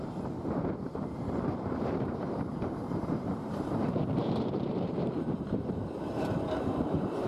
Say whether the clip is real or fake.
fake